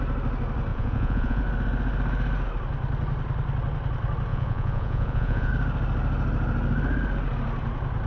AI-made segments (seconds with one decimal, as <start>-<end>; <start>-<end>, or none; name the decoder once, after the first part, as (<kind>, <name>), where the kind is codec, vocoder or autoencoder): 0.7-1.4 (vocoder, Vocos); 4.3-5.5